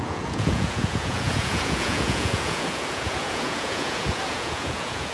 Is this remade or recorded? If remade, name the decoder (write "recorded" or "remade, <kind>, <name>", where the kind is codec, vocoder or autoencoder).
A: remade, vocoder, Vocos